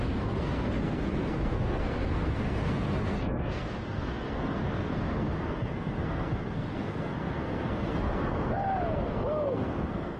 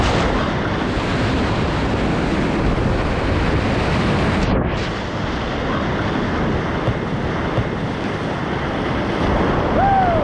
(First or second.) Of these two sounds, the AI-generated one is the first